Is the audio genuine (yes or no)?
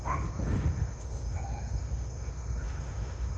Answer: no